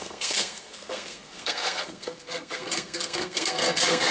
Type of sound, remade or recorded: remade